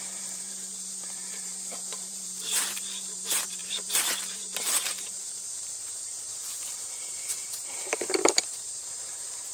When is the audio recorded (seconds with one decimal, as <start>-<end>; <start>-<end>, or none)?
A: none